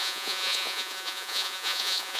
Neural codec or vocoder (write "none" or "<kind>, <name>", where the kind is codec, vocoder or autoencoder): vocoder, Vocos